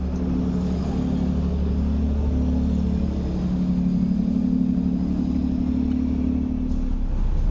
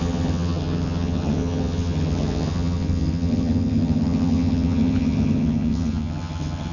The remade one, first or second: second